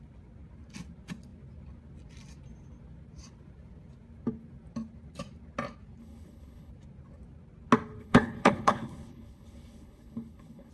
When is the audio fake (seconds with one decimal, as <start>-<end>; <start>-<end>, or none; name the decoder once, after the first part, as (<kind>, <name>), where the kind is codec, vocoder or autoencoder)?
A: 6.0-6.7 (codec, HILCodec); 8.0-10.7

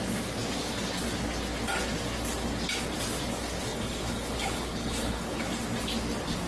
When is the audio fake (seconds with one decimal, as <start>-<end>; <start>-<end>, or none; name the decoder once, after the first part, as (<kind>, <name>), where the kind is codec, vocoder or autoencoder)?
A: 3.7-5.4 (codec, HILCodec)

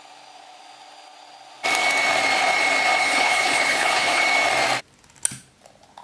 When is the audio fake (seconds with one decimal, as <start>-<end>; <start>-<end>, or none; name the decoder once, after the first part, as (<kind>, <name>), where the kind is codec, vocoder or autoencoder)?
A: 3.0-4.2 (codec, HILCodec)

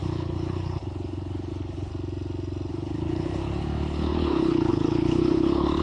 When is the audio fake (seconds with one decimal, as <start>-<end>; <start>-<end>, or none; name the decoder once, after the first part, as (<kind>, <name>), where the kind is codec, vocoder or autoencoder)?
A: 0.0-1.9 (codec, HILCodec); 2.7-5.8

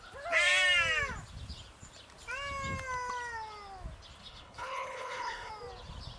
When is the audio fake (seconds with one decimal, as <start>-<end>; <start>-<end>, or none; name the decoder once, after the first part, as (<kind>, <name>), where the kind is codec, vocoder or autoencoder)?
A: 4.2-5.5 (codec, HILCodec)

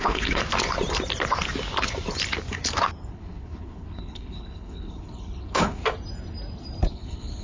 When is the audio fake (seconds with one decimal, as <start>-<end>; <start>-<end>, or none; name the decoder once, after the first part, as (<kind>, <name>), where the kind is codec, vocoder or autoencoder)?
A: 0.0-0.4 (codec, HILCodec); 3.1-5.8; 6.9-7.4